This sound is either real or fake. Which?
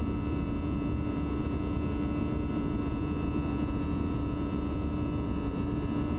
fake